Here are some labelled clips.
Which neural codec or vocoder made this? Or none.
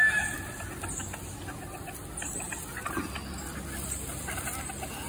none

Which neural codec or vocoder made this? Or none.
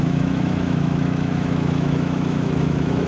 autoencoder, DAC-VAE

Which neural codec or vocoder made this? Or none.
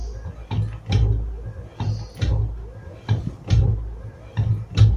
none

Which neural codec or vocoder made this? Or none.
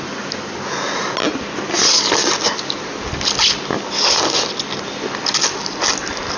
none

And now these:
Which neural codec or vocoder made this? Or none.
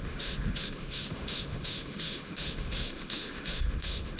autoencoder, DAC-VAE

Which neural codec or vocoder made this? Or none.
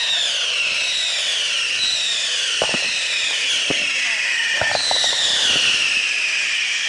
none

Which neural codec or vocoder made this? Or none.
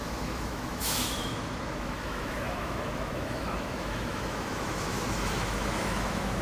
autoencoder, DAC-VAE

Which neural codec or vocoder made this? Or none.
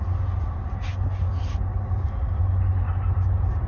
none